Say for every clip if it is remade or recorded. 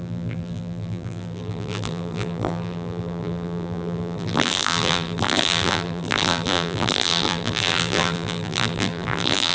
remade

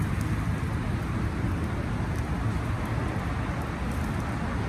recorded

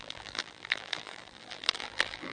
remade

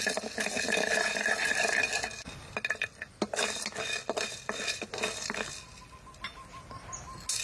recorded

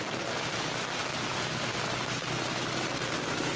remade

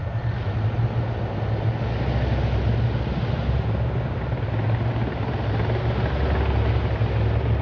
recorded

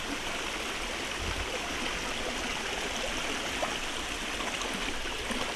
recorded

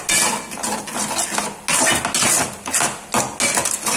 recorded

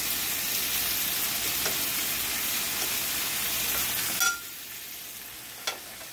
recorded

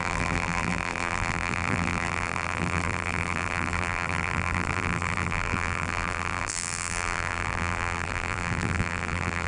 remade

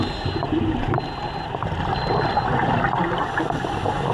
recorded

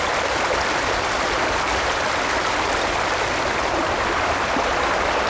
remade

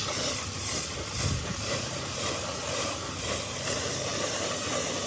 remade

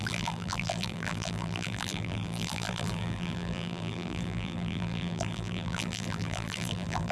remade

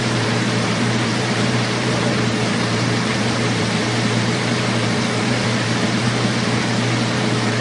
remade